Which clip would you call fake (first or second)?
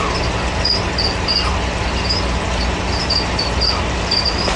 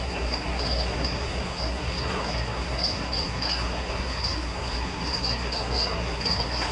second